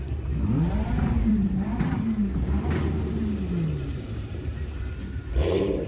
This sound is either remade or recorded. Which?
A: remade